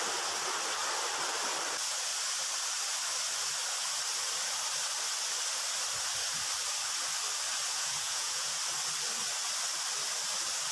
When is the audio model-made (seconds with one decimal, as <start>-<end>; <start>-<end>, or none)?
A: 7.7-8.6